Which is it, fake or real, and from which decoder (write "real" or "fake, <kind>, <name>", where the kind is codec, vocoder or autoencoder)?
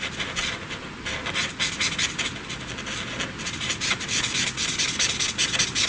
real